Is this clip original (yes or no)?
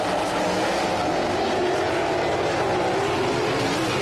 yes